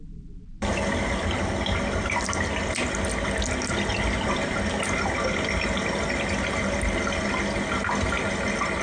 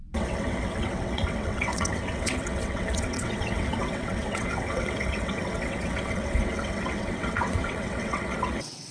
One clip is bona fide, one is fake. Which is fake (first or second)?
second